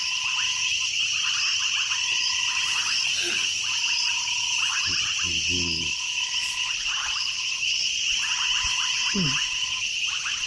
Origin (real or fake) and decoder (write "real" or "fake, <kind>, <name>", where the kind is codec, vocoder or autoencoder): real